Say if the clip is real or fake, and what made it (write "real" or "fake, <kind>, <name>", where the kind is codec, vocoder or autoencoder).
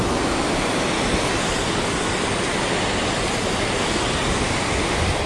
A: real